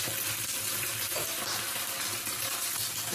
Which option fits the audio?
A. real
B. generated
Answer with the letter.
A